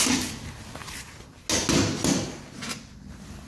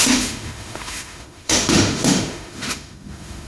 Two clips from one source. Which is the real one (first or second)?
first